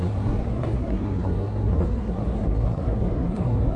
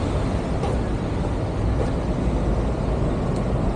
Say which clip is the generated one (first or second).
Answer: first